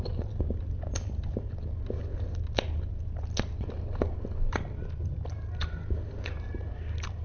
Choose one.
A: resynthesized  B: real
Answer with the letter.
B